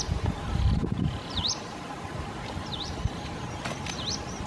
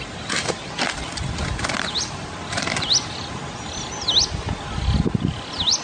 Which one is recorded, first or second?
second